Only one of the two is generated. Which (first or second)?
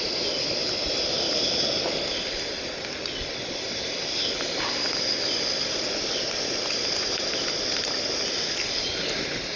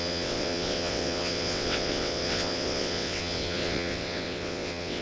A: second